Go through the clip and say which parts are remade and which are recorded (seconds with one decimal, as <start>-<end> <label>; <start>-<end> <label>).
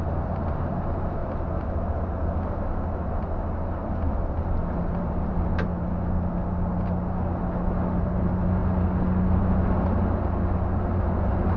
0.0-1.2 remade; 1.2-5.0 recorded; 5.0-5.7 remade; 5.7-8.0 recorded; 8.0-8.6 remade; 8.6-11.0 recorded; 11.0-11.6 remade